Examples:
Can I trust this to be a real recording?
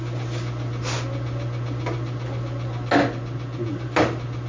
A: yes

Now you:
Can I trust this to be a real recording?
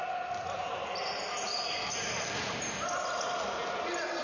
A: yes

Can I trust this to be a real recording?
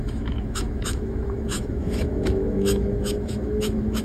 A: no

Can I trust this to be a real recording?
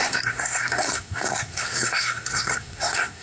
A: no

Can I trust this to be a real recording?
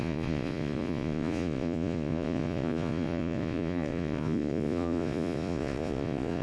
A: no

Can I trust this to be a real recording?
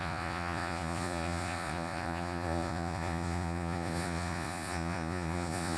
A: no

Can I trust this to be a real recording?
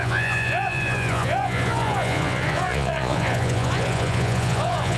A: no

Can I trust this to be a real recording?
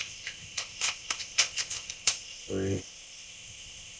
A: no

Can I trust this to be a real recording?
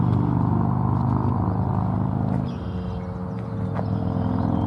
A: yes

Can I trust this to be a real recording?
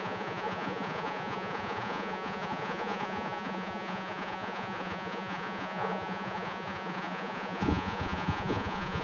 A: no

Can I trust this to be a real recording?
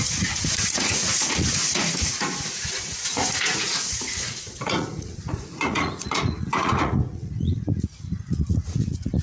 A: no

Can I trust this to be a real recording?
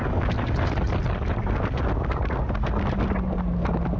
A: yes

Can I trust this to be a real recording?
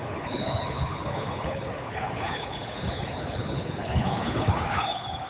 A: no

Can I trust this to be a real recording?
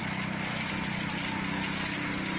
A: yes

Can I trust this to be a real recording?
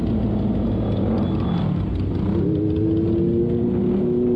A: yes